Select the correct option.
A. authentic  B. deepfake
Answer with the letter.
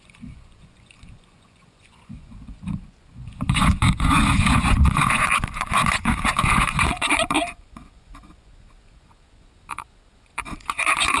B